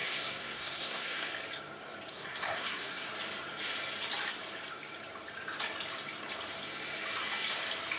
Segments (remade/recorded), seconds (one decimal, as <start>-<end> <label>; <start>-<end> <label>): 0.0-1.3 remade; 1.3-2.1 recorded; 2.1-3.1 remade; 3.1-8.0 recorded